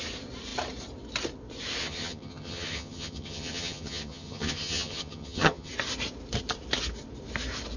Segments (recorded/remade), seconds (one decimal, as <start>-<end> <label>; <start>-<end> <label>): 0.0-1.8 recorded; 1.8-5.7 remade; 5.7-7.8 recorded